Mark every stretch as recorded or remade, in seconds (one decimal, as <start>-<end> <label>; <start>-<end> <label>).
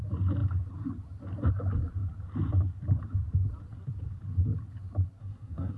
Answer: 0.0-5.2 recorded; 5.2-5.8 remade